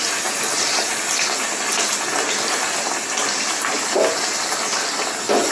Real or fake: real